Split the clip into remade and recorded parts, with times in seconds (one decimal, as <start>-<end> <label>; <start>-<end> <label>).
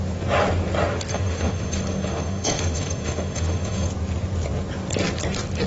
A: 0.0-1.1 recorded; 1.1-3.9 remade; 3.9-5.7 recorded